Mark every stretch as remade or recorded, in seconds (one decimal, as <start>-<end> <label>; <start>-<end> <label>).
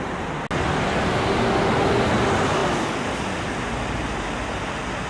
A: 0.0-5.1 recorded